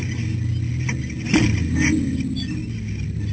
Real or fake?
real